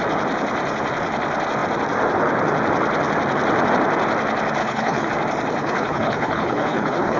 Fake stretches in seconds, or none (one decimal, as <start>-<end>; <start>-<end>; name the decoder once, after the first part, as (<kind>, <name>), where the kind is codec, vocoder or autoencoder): 4.6-5.1 (codec, HILCodec); 5.6-7.2